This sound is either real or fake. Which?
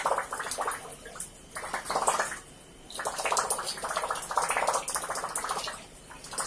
real